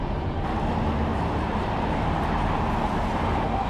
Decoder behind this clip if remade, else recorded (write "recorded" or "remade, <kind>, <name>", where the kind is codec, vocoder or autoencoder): remade, vocoder, BigVGAN v2